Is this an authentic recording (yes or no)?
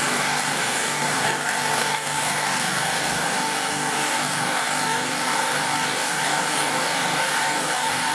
no